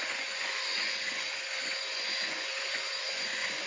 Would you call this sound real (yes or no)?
no